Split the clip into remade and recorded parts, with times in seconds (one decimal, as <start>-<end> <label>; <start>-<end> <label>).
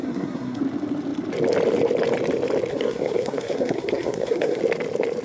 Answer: 0.0-0.6 remade; 0.6-2.7 recorded; 2.7-4.6 remade; 4.6-5.2 recorded